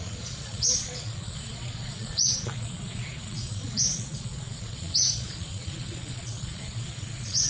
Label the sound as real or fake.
fake